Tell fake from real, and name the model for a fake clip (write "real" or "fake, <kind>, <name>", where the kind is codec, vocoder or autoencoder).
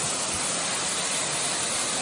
real